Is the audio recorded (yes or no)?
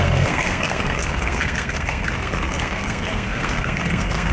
no